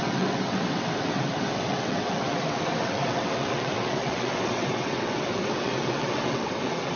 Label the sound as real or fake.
fake